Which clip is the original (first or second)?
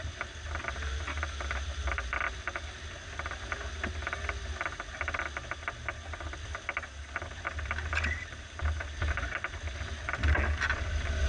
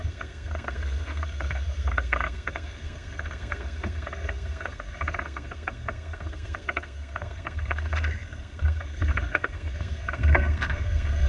first